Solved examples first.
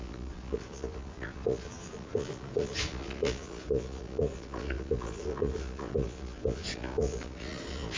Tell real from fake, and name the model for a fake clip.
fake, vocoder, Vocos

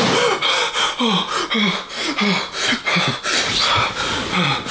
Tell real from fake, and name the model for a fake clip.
real